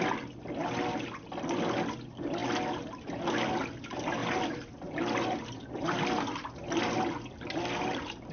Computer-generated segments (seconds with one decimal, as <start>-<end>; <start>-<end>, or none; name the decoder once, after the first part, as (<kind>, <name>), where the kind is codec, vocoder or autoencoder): 4.2-6.8 (vocoder, BigVGAN v2)